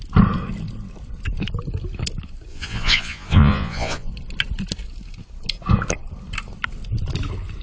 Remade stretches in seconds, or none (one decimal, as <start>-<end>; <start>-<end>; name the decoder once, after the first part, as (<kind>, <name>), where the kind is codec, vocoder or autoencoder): 2.5-4.1 (vocoder, Vocos)